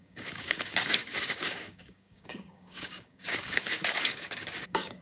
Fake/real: fake